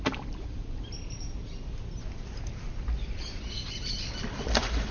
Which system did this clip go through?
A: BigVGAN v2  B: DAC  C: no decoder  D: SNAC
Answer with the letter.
C